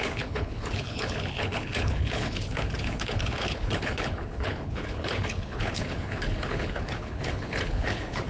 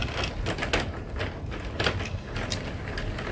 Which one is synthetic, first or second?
first